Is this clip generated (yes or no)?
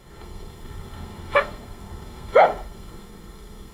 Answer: yes